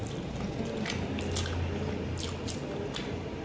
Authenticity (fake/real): real